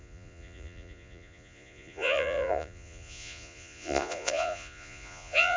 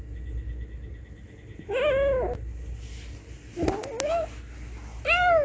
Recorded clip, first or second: second